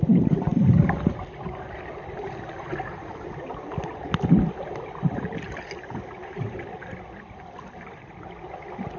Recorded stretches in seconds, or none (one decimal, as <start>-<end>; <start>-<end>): 0.0-9.0